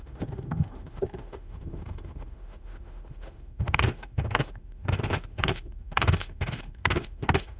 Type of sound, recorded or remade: remade